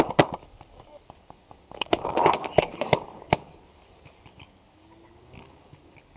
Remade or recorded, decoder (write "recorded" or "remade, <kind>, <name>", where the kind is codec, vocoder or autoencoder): remade, codec, DAC